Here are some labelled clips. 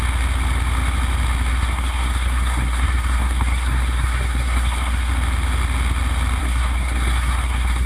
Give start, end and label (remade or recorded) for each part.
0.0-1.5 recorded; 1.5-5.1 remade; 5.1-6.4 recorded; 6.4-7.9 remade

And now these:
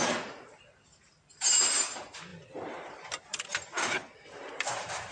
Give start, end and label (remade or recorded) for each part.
0.0-4.0 remade; 4.0-4.5 recorded; 4.5-5.1 remade

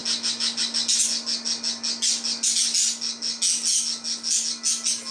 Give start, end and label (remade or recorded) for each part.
0.0-5.1 recorded

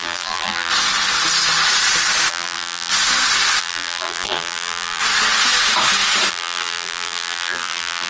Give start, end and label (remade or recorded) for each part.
0.0-0.7 remade; 0.7-2.3 recorded; 2.3-2.9 remade; 2.9-3.6 recorded; 3.6-5.0 remade; 5.0-6.3 recorded; 6.3-8.1 remade

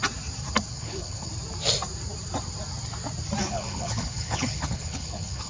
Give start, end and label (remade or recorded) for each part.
0.0-0.7 recorded; 0.7-1.3 remade; 1.3-3.5 recorded; 3.5-5.5 remade

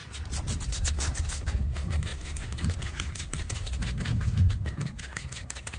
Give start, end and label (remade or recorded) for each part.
0.0-0.7 recorded; 0.7-5.8 remade

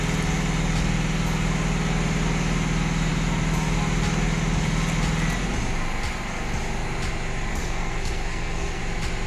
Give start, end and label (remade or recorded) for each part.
0.0-7.5 recorded; 7.5-8.8 remade; 8.8-9.3 recorded